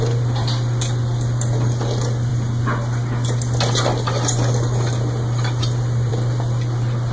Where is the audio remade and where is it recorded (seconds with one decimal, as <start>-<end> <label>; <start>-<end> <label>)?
0.0-7.1 recorded